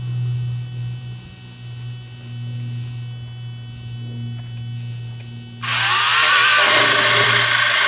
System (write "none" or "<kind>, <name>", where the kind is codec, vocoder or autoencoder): none